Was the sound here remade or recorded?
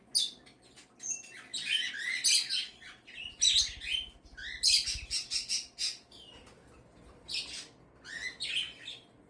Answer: recorded